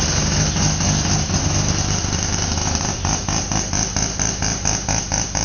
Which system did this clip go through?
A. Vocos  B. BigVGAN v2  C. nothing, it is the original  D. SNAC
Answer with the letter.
C